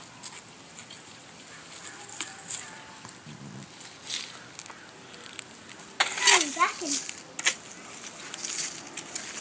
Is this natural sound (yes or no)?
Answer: yes